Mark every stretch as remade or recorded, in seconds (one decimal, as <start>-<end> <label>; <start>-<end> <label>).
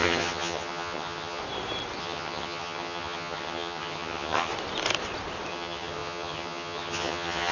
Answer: 0.0-1.4 remade; 1.4-2.0 recorded; 2.0-4.5 remade; 4.5-5.5 recorded; 5.5-7.5 remade